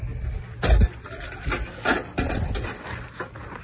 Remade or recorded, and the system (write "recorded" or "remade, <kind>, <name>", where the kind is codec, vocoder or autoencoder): recorded